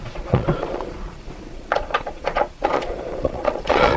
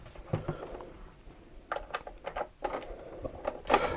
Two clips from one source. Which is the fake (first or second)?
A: first